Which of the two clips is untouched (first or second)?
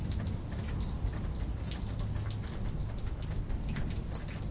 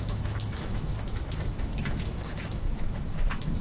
first